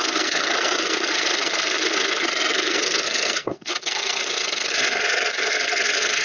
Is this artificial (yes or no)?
yes